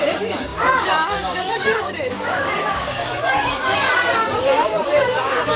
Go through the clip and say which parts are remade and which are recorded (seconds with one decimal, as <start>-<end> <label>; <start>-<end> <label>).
0.0-5.6 remade